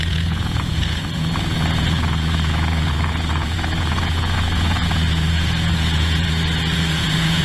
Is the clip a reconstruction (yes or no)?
yes